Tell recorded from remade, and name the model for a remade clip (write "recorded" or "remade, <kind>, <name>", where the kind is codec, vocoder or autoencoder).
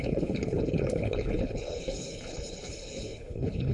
remade, codec, HILCodec